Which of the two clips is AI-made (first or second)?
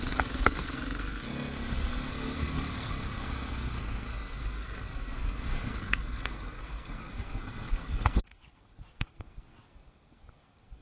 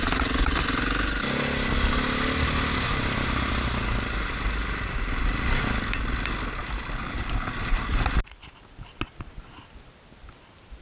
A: first